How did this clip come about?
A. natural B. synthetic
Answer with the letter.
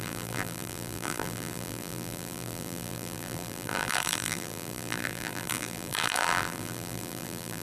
B